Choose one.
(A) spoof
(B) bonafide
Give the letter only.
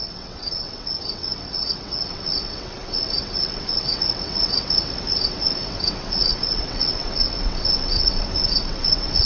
A